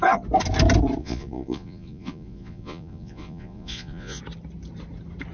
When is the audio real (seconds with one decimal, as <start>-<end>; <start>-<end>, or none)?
0.0-1.0; 4.2-5.3